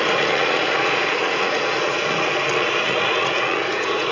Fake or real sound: fake